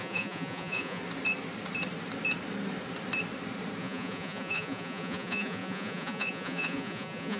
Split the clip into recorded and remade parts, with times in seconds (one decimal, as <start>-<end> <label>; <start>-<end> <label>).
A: 0.0-1.0 remade; 1.0-3.8 recorded; 3.8-7.4 remade